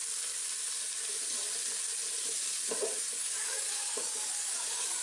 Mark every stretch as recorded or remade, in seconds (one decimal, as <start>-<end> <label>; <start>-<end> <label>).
0.0-3.0 recorded; 3.0-5.0 remade